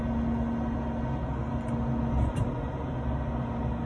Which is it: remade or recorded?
recorded